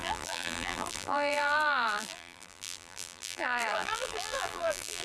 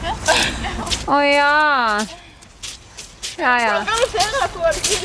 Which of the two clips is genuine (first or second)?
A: second